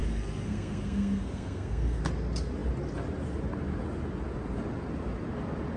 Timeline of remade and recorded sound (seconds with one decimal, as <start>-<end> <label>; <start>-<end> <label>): 0.0-2.0 remade; 2.0-5.8 recorded

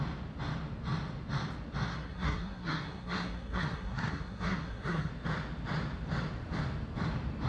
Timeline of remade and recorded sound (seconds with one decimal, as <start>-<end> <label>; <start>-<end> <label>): 0.0-1.9 recorded; 1.9-5.1 remade; 5.1-7.5 recorded

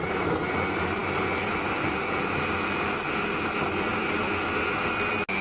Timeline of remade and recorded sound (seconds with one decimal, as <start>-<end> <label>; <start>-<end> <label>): 0.0-5.4 recorded

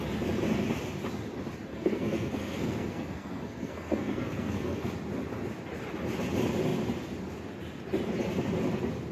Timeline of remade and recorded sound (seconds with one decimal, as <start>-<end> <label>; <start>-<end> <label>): 0.0-1.7 recorded; 1.7-4.9 remade; 4.9-9.1 recorded